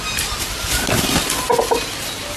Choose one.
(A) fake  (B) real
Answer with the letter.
B